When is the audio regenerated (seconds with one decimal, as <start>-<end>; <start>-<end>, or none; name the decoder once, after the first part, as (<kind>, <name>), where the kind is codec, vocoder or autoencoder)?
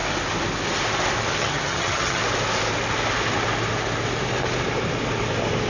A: 1.4-2.2 (vocoder, HiFi-GAN)